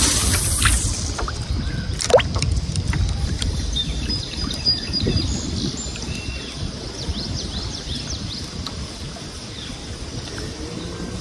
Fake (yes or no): yes